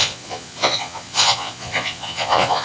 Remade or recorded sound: remade